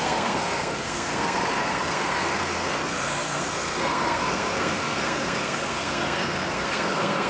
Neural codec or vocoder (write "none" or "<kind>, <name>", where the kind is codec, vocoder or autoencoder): codec, SNAC